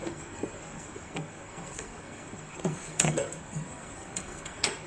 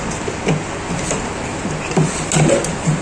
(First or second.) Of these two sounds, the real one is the second